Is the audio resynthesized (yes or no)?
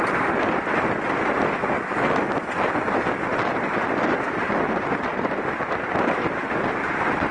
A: yes